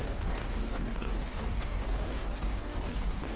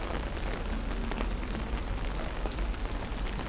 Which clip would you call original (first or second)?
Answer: second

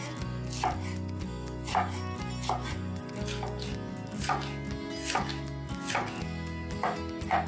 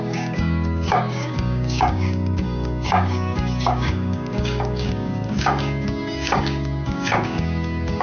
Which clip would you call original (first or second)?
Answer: first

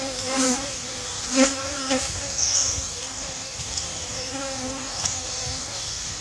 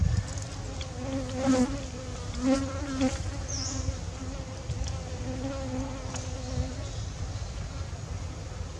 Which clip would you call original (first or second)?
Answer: second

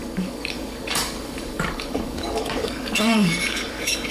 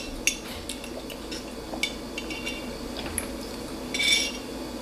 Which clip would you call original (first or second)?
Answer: second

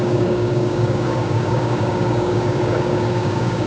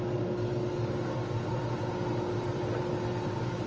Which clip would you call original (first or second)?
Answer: second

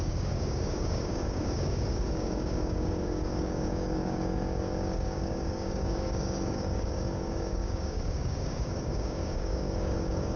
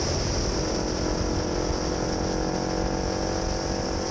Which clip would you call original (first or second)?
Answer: second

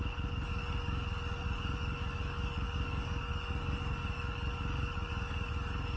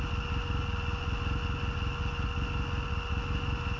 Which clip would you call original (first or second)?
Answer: second